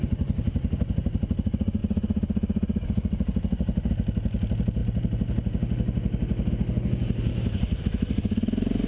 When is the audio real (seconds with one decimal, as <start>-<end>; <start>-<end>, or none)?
0.0-7.3; 7.8-8.9